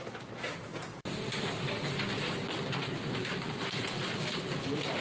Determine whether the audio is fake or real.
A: real